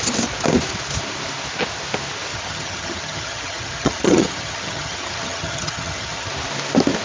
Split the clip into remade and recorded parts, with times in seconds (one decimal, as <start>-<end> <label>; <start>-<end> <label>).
0.0-2.3 recorded; 2.3-6.3 remade; 6.3-7.0 recorded

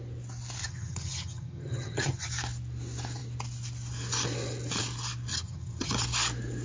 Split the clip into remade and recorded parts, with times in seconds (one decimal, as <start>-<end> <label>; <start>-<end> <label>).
0.0-0.6 recorded; 0.6-2.3 remade; 2.3-5.3 recorded; 5.3-5.9 remade; 5.9-6.6 recorded

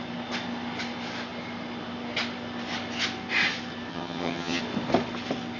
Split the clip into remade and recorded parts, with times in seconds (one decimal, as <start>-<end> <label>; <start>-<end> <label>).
0.0-3.9 recorded; 3.9-4.6 remade; 4.6-5.6 recorded

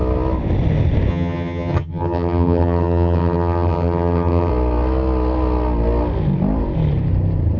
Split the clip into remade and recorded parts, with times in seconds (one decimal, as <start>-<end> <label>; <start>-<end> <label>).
0.0-1.1 recorded; 1.1-4.5 remade; 4.5-7.6 recorded

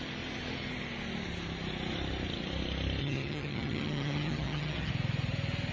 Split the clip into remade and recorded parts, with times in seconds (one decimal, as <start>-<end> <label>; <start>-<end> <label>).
0.0-3.0 recorded; 3.0-4.9 remade; 4.9-5.7 recorded

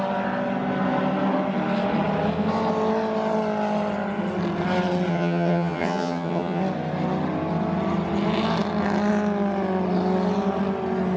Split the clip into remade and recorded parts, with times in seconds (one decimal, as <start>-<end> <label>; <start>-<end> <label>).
0.0-5.1 recorded; 5.1-6.6 remade; 6.6-11.2 recorded

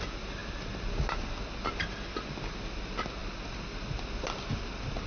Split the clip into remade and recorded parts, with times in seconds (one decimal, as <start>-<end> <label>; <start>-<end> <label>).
0.0-5.1 recorded